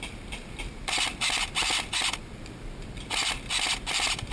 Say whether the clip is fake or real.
fake